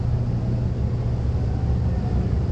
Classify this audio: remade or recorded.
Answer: recorded